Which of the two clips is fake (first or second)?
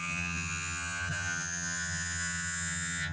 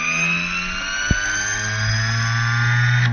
first